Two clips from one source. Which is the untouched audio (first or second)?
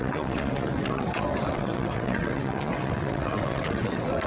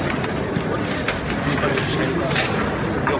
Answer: second